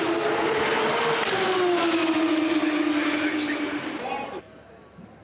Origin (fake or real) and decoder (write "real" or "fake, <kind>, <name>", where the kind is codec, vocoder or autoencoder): real